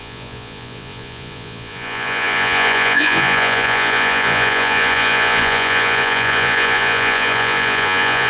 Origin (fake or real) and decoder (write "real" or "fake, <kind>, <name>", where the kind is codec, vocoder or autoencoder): fake, vocoder, Vocos